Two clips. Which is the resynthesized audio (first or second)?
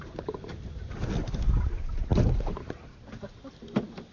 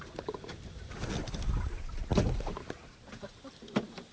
second